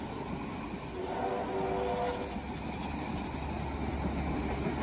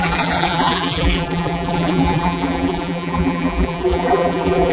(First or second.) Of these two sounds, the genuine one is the first